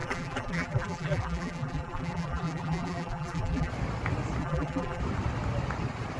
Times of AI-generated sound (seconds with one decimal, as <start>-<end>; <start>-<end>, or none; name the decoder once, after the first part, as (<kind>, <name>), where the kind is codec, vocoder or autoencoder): 0.0-3.7 (vocoder, BigVGAN v2); 4.4-5.0